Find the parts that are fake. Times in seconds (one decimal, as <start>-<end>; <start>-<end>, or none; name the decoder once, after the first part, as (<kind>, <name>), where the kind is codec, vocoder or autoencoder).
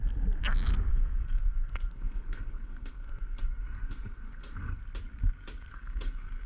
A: 0.9-4.8 (codec, SNAC); 5.7-6.5